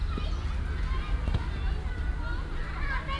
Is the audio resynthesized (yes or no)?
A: no